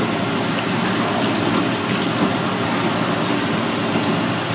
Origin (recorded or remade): recorded